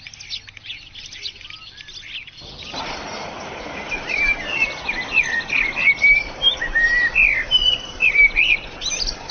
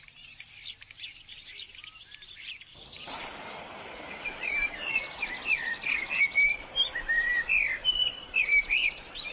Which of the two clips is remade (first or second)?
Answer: second